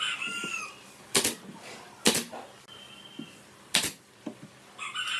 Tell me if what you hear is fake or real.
real